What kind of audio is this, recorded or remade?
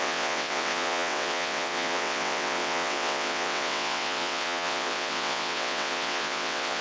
remade